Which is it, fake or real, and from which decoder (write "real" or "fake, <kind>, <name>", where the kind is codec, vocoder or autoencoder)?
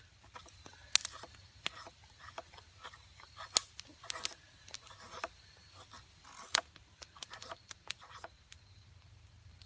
real